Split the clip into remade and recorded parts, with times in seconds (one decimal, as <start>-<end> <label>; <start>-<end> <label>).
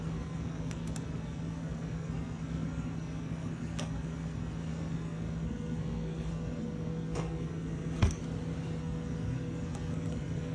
0.0-8.2 remade; 8.2-8.8 recorded; 8.8-10.5 remade